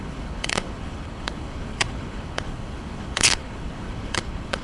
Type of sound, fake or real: fake